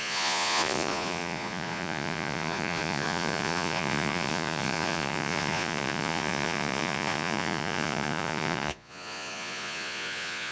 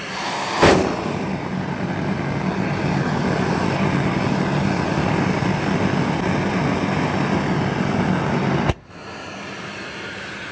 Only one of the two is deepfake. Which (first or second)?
first